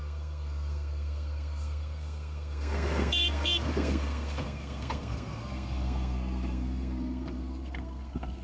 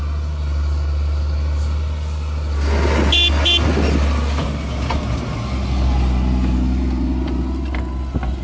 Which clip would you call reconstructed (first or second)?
first